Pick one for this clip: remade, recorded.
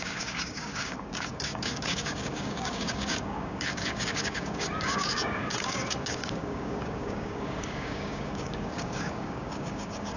remade